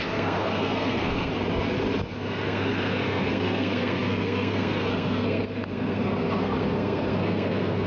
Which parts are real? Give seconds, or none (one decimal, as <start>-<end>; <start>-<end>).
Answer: 1.3-2.1